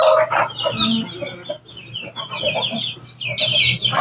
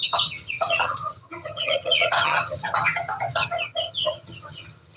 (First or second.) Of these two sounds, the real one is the first